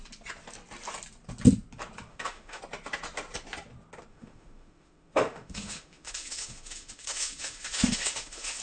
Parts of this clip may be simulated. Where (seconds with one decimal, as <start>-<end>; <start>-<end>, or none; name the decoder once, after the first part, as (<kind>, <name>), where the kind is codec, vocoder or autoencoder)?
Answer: 2.1-2.6 (autoencoder, DAC-VAE); 4.1-8.6

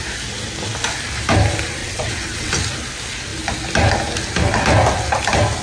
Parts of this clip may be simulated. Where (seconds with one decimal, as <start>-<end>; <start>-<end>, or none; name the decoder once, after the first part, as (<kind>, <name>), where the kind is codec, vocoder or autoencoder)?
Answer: 1.8-2.5 (vocoder, WaveNeXt)

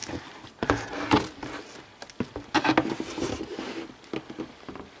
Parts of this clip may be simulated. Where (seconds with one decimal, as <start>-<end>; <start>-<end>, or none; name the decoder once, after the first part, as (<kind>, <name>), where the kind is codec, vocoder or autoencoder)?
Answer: none

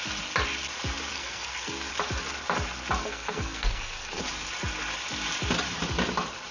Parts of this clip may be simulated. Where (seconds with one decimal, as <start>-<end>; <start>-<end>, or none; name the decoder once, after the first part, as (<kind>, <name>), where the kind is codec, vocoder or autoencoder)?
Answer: 1.1-1.9 (codec, SNAC); 3.0-4.2